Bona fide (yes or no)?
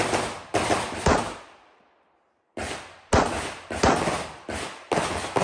yes